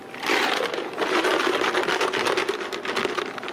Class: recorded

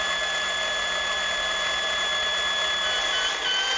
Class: recorded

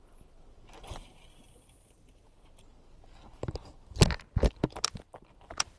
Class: recorded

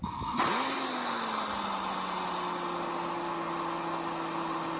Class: recorded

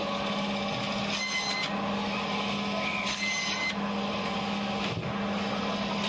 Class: recorded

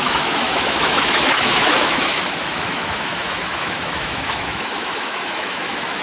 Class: remade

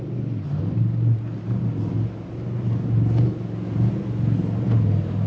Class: recorded